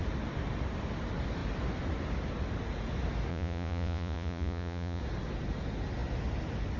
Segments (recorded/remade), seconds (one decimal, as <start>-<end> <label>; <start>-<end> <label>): 0.0-3.3 recorded; 3.3-5.0 remade; 5.0-6.8 recorded